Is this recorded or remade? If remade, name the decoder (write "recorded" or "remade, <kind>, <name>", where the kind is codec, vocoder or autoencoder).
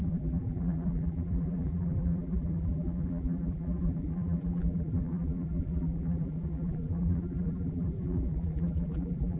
remade, vocoder, BigVGAN v2